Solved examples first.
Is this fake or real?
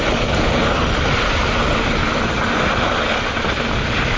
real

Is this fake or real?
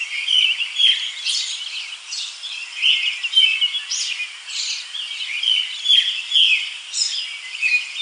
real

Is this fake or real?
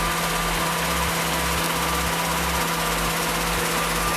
real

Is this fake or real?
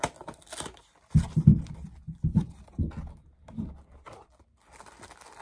real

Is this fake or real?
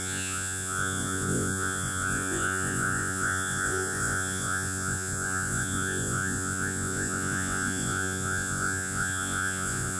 fake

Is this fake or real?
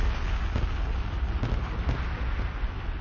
real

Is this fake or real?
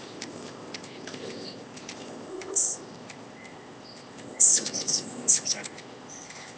fake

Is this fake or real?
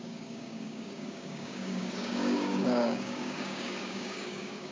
fake